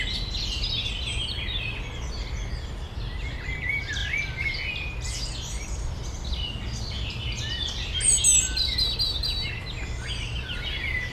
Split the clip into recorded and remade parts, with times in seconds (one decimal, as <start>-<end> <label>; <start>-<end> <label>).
0.0-11.1 recorded